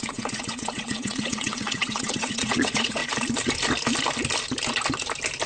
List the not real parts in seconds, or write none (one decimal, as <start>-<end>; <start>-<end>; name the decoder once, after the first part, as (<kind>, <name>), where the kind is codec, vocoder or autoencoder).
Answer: 0.0-3.0 (vocoder, WaveNeXt)